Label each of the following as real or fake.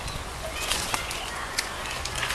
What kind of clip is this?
fake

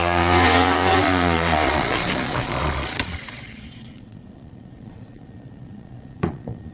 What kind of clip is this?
fake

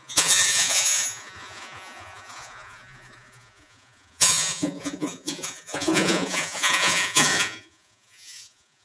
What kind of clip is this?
fake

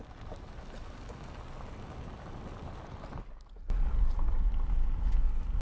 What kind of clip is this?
real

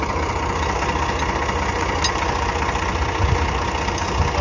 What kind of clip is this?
real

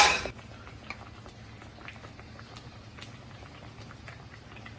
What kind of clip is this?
real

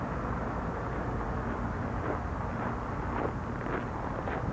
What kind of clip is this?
real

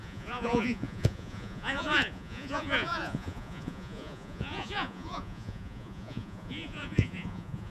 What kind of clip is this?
fake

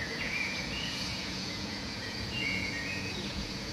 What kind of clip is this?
fake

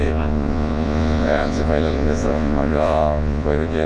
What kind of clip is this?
fake